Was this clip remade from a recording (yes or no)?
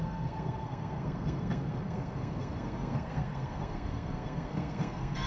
yes